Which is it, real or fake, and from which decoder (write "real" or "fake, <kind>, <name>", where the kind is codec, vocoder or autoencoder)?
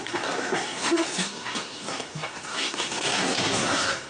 fake, codec, SNAC